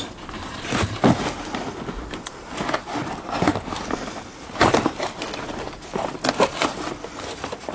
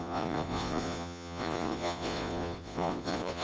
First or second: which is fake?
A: second